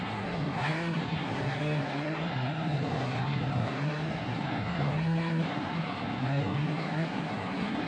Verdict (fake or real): fake